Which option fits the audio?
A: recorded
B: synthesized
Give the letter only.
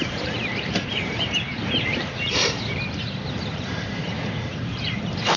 B